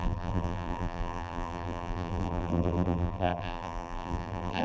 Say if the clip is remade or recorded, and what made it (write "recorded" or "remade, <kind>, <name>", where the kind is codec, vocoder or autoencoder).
remade, vocoder, BigVGAN v2